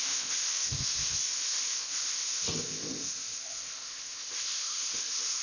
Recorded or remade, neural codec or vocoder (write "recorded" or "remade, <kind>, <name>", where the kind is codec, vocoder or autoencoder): remade, codec, ZipCodec